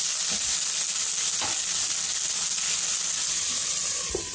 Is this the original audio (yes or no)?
yes